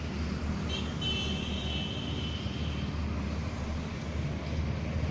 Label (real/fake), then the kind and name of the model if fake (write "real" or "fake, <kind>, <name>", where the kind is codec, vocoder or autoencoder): real